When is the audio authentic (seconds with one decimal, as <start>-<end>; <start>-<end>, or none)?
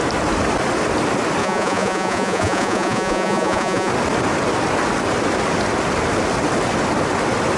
0.0-1.4; 3.9-7.6